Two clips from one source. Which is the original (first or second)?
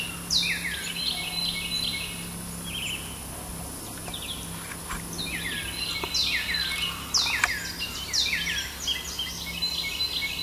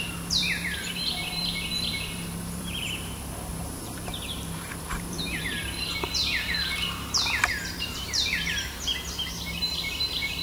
first